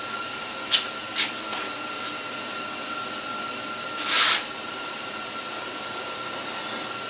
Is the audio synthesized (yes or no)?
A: no